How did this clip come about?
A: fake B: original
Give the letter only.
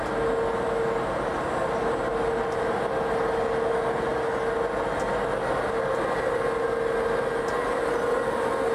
B